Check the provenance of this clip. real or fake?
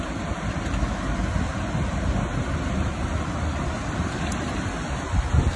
real